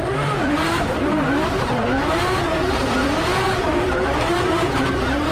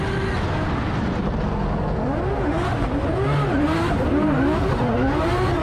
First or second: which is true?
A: second